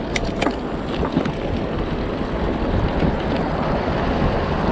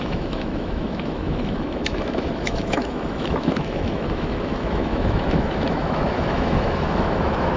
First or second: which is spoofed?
second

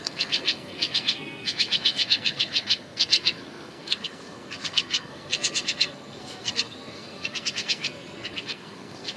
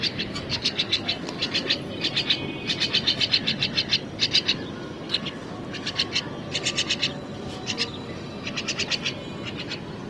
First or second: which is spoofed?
first